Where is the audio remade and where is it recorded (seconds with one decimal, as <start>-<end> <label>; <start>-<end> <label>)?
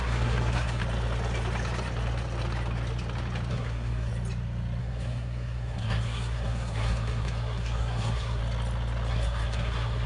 0.0-0.8 remade; 0.8-3.5 recorded; 3.5-4.1 remade; 4.1-4.8 recorded; 4.8-8.4 remade; 8.4-9.1 recorded; 9.1-10.1 remade